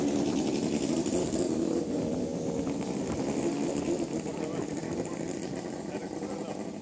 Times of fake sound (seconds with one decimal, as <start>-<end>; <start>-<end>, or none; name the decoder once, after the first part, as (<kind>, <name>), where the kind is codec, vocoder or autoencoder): 1.2-1.8 (codec, DAC)